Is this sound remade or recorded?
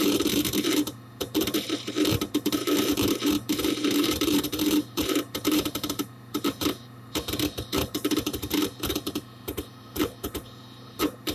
remade